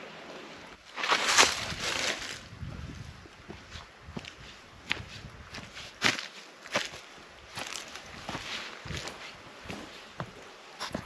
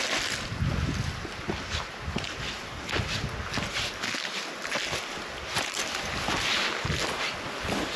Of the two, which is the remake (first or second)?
first